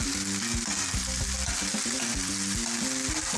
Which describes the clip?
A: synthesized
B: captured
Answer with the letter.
B